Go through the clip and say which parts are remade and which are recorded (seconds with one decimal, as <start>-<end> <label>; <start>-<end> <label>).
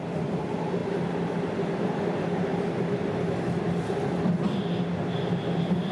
0.0-5.9 recorded